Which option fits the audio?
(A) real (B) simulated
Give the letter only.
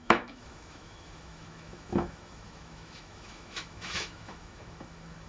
B